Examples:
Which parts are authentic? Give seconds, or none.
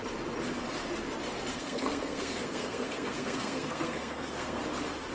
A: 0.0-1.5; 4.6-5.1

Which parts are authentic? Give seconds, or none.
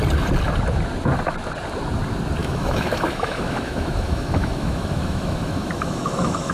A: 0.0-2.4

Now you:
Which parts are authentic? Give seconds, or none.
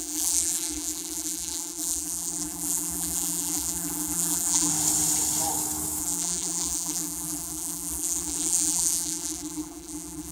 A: 4.7-6.0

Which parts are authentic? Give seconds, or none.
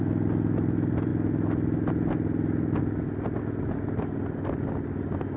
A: 0.0-5.4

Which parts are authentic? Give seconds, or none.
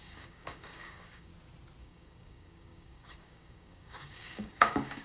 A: 1.3-1.8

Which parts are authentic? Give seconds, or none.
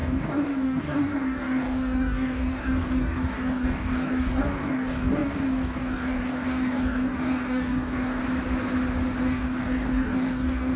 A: 8.2-9.2